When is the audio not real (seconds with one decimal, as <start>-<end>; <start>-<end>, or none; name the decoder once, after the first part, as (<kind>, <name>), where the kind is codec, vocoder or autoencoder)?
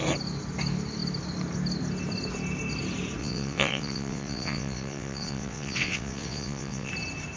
3.2-6.9 (vocoder, WaveNeXt)